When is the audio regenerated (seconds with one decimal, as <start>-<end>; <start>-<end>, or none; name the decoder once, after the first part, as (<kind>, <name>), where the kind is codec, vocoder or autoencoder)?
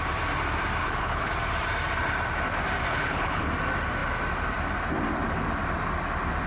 0.8-1.3 (codec, HILCodec); 2.9-3.5